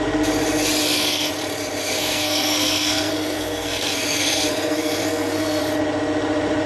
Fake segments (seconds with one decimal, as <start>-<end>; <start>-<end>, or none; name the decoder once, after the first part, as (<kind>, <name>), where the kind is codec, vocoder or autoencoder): 0.8-1.3 (codec, SNAC); 1.8-5.6